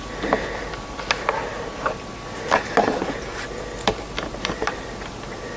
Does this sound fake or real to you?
real